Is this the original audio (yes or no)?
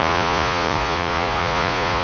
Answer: no